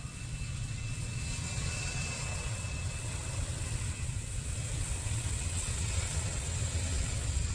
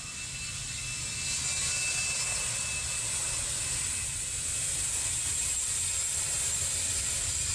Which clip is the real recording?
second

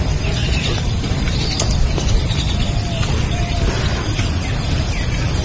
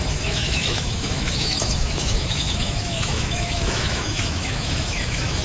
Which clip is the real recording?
first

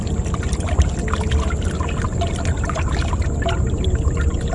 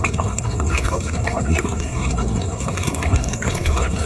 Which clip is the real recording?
first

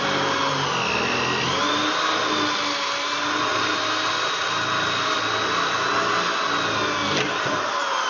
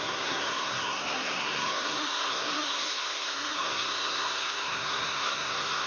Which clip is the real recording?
first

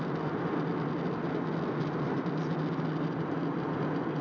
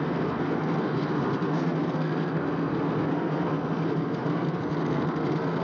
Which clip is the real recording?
first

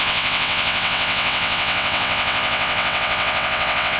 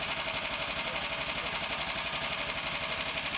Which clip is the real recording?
second